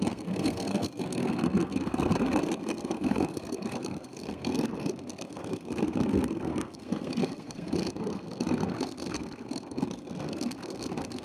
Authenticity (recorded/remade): remade